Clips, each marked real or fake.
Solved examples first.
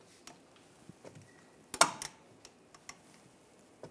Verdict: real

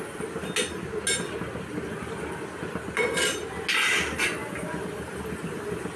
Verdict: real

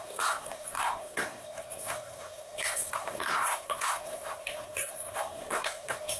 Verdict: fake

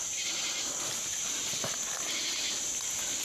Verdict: real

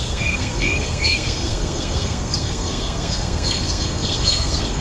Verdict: fake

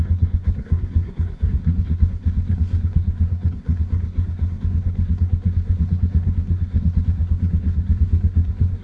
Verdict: fake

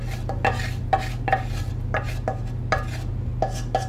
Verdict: real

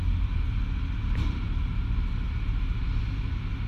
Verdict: real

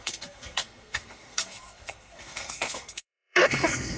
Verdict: fake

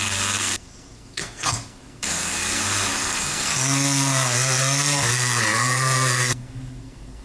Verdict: fake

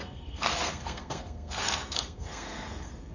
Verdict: fake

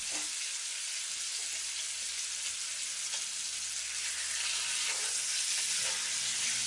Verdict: real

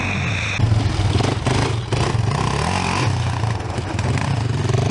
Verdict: real